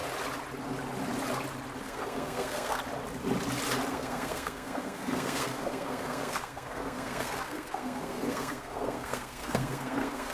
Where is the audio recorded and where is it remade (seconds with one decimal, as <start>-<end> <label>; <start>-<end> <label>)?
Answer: 0.0-1.8 recorded; 1.8-2.8 remade; 2.8-3.9 recorded; 3.9-10.3 remade